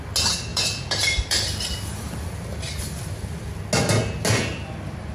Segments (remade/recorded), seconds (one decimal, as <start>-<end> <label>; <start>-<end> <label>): 0.0-0.5 recorded; 0.5-3.6 remade; 3.6-5.1 recorded